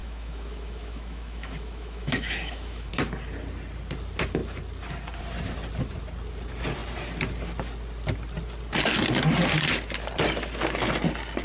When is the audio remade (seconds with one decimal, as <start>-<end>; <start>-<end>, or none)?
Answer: 0.0-2.9